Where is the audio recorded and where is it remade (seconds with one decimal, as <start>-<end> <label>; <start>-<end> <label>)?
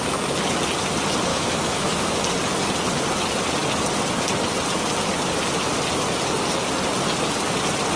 0.0-1.3 recorded; 1.3-2.2 remade; 2.2-8.0 recorded